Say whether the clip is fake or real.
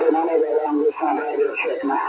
fake